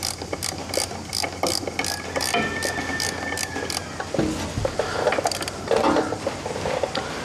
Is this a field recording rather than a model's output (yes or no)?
yes